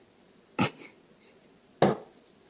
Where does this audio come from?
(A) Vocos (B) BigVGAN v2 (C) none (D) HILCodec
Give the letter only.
C